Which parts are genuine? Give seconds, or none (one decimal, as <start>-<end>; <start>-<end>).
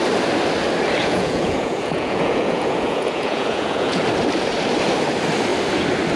0.0-1.0; 4.0-6.2